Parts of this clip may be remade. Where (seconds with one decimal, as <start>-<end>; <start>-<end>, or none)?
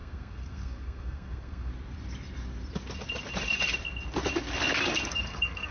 0.0-1.7; 5.1-5.7